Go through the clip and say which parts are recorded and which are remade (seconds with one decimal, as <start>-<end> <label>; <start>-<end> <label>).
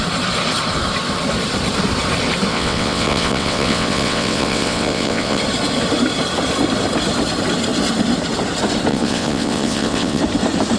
0.0-2.5 recorded; 2.5-5.4 remade; 5.4-8.9 recorded; 8.9-10.2 remade; 10.2-10.8 recorded